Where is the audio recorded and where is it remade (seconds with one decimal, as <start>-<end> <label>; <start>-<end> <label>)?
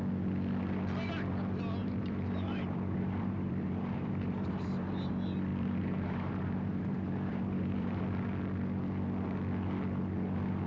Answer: 0.0-1.8 recorded; 1.8-5.1 remade; 5.1-5.5 recorded; 5.5-8.0 remade; 8.0-10.7 recorded